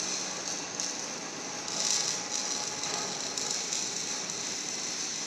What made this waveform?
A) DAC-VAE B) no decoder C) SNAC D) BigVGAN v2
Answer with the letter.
B